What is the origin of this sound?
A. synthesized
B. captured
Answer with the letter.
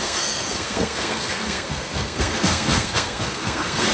A